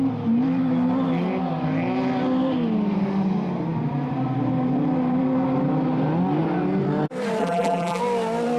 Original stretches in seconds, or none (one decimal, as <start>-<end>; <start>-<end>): 0.0-7.4; 8.0-8.6